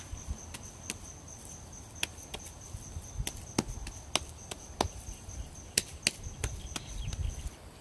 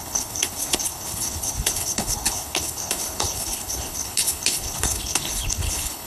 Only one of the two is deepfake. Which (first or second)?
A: second